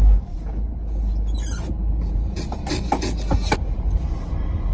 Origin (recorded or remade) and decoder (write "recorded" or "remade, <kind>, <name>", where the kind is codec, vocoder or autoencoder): recorded